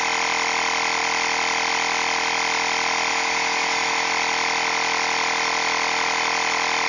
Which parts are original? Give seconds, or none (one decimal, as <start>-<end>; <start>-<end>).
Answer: 0.0-3.1; 4.1-6.9